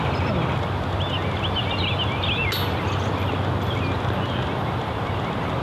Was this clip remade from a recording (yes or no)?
no